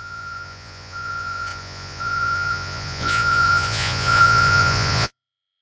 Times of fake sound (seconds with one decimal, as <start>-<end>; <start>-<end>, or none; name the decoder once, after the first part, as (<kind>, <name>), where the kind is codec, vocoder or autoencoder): 0.0-5.6 (vocoder, Vocos)